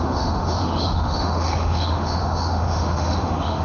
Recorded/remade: remade